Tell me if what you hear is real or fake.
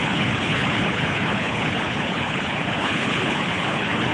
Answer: fake